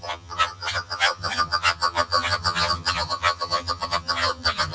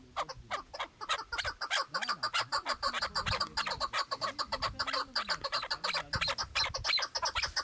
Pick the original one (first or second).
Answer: second